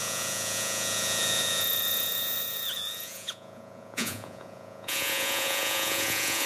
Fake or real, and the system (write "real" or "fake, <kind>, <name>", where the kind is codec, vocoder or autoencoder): fake, vocoder, Vocos